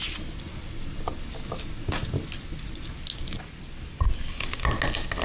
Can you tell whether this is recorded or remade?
recorded